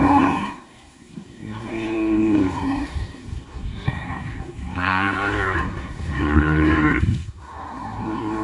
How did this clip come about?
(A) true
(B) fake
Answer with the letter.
B